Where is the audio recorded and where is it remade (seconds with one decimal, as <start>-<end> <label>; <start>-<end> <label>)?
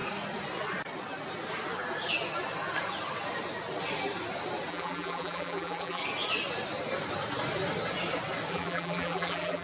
0.0-4.7 recorded; 4.7-6.0 remade; 6.0-8.5 recorded; 8.5-9.6 remade